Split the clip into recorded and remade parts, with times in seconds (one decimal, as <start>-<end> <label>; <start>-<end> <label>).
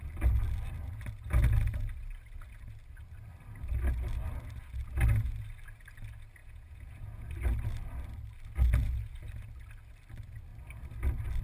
0.0-6.4 recorded; 6.4-7.3 remade; 7.3-11.4 recorded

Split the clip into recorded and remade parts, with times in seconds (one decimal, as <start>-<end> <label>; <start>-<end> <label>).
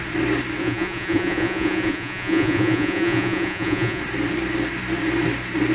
0.0-0.6 recorded; 0.6-4.0 remade; 4.0-5.7 recorded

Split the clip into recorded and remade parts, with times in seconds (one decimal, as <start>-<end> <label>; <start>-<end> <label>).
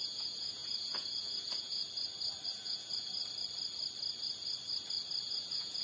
0.0-1.8 remade; 1.8-2.5 recorded; 2.5-3.2 remade; 3.2-5.2 recorded; 5.2-5.8 remade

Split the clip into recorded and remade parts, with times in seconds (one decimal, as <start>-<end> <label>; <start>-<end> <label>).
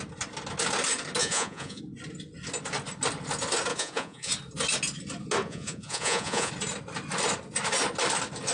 0.0-1.2 recorded; 1.2-1.8 remade; 1.8-3.7 recorded; 3.7-4.3 remade; 4.3-5.4 recorded; 5.4-6.5 remade; 6.5-8.5 recorded